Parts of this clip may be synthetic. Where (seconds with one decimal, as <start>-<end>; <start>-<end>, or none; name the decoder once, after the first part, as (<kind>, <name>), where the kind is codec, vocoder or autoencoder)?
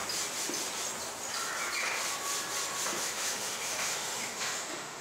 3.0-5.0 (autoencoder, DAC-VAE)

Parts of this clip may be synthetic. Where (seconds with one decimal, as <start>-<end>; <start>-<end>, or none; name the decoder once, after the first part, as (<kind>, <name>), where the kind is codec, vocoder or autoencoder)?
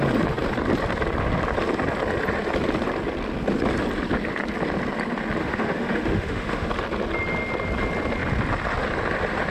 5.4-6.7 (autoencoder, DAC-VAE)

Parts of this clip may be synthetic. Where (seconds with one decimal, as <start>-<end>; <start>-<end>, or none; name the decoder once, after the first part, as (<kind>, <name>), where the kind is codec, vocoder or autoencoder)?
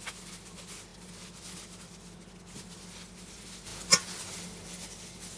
none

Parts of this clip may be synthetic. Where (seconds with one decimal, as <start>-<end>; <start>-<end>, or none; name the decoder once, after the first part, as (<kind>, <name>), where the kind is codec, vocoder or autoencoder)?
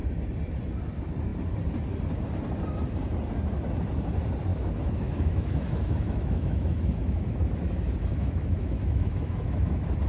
4.5-7.5 (autoencoder, DAC-VAE); 8.1-9.7